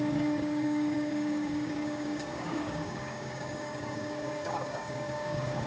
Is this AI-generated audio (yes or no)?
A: yes